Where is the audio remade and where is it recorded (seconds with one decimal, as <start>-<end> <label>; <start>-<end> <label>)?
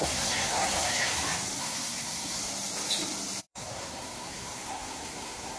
0.0-1.1 remade; 1.1-1.6 recorded; 1.6-2.4 remade; 2.4-3.4 recorded; 3.4-5.6 remade